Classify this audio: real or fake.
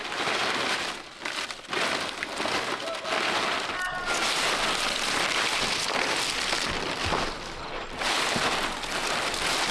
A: real